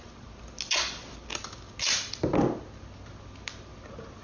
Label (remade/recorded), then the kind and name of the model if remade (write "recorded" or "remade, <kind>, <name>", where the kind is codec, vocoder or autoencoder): recorded